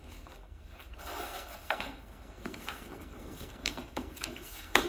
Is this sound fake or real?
fake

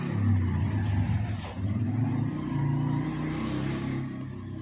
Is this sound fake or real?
real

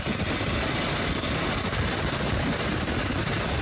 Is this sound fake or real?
real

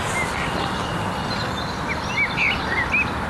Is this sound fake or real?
real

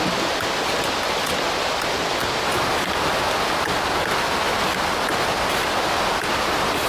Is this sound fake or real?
real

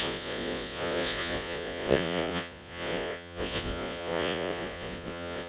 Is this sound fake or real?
fake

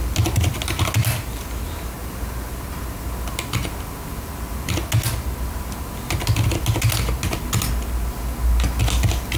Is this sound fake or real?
real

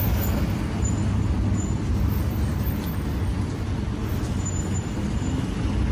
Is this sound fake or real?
real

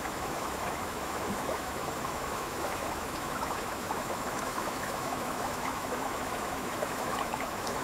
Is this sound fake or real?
fake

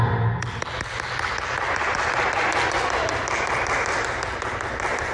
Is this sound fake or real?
real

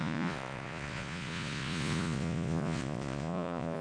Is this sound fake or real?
fake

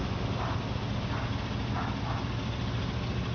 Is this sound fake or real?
real